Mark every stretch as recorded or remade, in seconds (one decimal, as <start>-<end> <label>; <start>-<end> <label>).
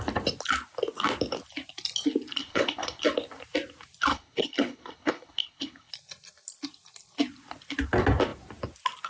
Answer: 0.0-2.4 recorded; 2.4-3.0 remade; 3.0-4.1 recorded; 4.1-5.9 remade; 5.9-9.1 recorded